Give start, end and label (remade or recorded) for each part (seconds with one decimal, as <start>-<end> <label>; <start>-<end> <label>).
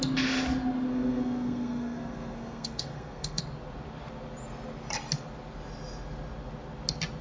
0.0-0.9 recorded; 0.9-3.4 remade; 3.4-7.2 recorded